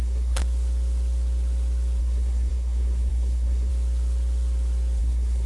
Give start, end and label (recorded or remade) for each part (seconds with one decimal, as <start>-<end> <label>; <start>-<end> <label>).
0.0-0.4 remade; 0.4-2.0 recorded; 2.0-3.7 remade; 3.7-5.0 recorded; 5.0-5.5 remade